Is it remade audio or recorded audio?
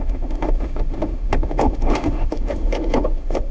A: remade